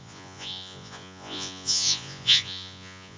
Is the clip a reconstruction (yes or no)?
yes